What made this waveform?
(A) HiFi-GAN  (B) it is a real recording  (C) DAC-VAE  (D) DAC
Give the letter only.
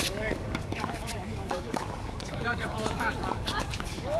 D